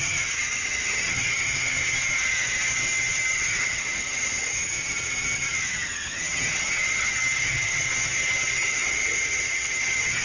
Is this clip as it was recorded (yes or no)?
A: no